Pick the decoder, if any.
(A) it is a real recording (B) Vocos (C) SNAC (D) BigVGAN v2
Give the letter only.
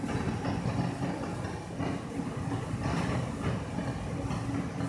A